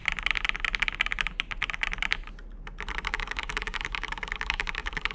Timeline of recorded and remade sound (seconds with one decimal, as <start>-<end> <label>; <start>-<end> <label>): 0.0-3.1 recorded; 3.1-5.1 remade